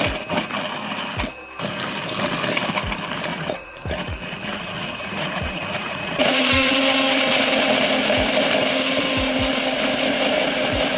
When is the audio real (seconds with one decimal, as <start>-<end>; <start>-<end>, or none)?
0.0-3.3; 6.7-11.0